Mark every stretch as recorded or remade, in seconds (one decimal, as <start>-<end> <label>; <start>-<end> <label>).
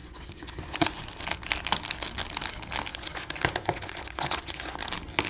0.0-1.0 remade; 1.0-2.9 recorded; 2.9-4.8 remade; 4.8-5.3 recorded